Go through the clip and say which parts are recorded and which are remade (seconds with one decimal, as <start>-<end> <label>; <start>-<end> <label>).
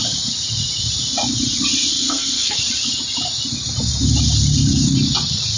0.0-1.9 recorded; 1.9-2.6 remade; 2.6-5.6 recorded